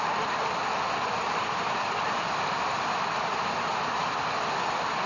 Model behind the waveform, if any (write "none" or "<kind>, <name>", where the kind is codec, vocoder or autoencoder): none